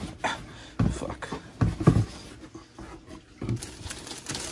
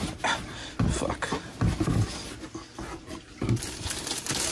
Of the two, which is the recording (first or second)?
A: first